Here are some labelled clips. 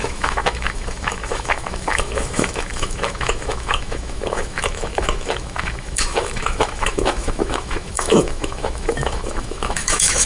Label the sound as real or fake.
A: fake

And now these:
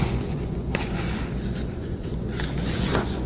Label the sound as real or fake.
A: fake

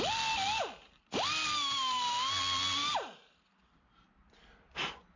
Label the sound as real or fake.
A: real